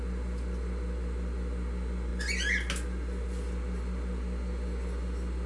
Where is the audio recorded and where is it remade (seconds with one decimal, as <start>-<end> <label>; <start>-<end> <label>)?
0.0-5.5 recorded